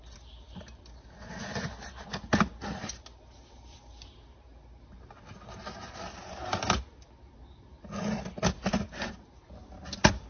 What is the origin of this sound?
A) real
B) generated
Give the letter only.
A